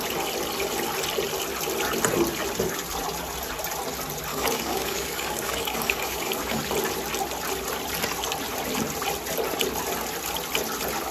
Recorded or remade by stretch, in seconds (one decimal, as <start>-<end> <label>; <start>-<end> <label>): 0.0-4.3 recorded; 4.3-6.6 remade; 6.6-11.1 recorded